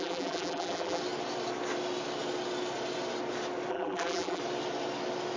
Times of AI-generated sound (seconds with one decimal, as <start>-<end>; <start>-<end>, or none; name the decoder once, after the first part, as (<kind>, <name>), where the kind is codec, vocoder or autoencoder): 0.0-1.0 (vocoder, BigVGAN v2); 3.7-4.4